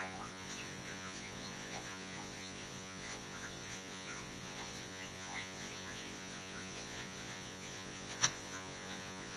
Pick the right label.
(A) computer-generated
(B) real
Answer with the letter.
A